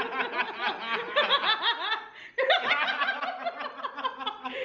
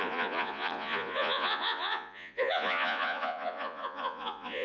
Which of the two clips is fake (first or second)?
second